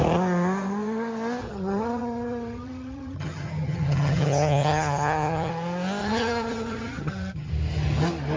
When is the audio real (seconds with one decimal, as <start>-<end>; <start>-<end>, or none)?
0.0-1.4; 5.5-6.0; 7.5-8.4